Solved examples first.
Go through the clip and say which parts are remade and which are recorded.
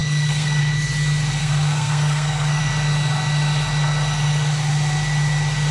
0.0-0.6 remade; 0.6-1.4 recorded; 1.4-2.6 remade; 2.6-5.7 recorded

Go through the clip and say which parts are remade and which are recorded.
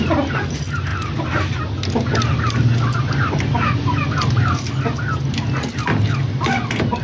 0.0-7.0 recorded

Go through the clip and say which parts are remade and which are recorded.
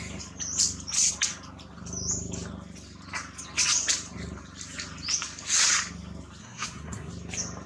0.0-6.4 recorded; 6.4-7.1 remade; 7.1-7.7 recorded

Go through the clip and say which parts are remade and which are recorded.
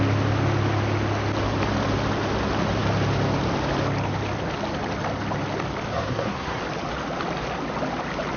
0.0-5.9 recorded; 5.9-6.6 remade; 6.6-8.4 recorded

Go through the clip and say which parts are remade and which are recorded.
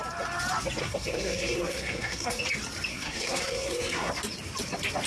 0.0-0.8 recorded; 0.8-2.4 remade; 2.4-2.9 recorded; 2.9-4.1 remade; 4.1-5.1 recorded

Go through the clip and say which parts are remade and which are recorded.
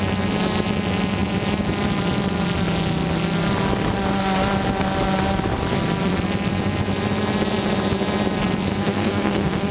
0.0-8.8 recorded; 8.8-9.7 remade